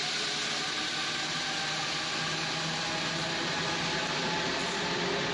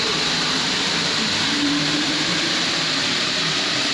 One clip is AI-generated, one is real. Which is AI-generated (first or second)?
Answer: second